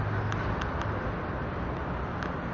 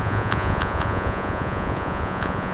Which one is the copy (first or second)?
second